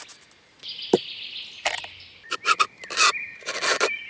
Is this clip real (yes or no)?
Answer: yes